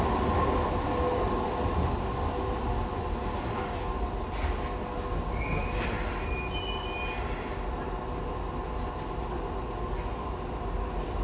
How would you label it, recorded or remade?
recorded